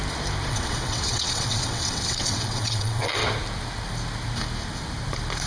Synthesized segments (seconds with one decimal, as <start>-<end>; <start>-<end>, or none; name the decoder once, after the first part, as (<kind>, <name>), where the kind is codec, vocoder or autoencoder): 0.5-3.2 (vocoder, WaveNeXt)